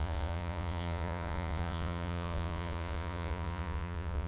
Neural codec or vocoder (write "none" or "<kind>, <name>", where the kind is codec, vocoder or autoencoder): vocoder, Vocos